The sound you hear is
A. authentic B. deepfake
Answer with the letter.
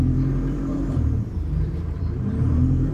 B